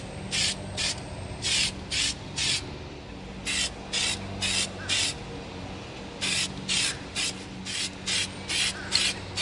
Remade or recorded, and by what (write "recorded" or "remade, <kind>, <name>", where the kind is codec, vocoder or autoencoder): recorded